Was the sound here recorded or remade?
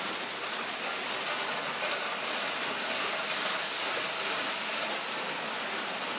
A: recorded